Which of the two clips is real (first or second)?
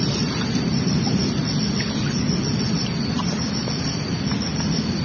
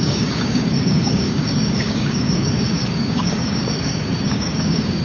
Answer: first